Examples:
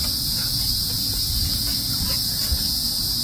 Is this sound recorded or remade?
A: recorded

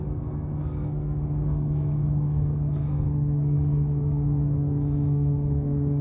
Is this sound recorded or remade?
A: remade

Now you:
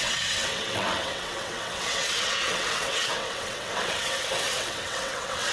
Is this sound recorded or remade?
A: remade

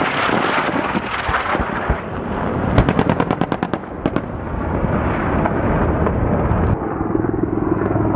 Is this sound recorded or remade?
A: recorded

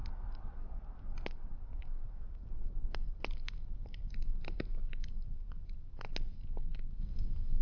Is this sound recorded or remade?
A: recorded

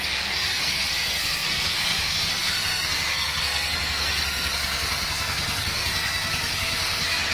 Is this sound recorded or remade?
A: remade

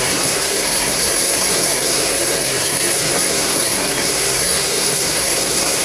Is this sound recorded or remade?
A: remade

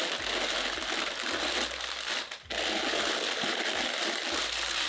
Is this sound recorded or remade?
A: recorded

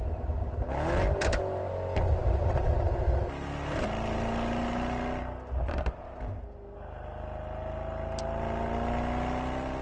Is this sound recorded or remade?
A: recorded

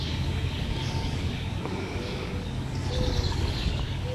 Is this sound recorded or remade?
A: remade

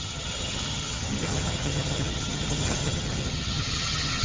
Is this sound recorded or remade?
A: remade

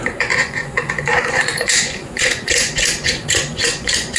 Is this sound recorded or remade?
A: remade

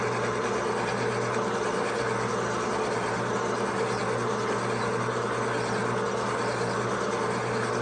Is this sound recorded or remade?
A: recorded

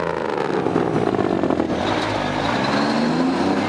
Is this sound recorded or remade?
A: recorded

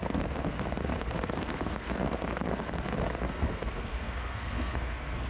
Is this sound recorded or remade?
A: remade